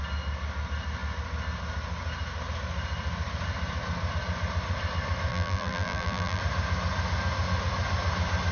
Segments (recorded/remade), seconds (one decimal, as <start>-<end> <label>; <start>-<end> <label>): 0.0-5.3 recorded; 5.3-6.4 remade; 6.4-8.5 recorded